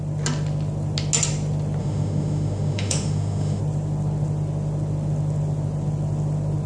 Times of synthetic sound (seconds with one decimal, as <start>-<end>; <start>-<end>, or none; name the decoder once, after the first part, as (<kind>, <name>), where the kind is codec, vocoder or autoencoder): 1.8-3.6 (autoencoder, DAC-VAE)